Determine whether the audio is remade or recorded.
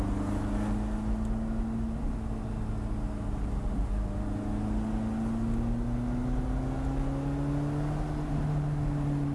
recorded